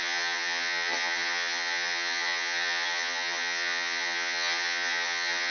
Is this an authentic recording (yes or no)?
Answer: no